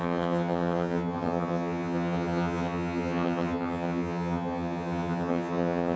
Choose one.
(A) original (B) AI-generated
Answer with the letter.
B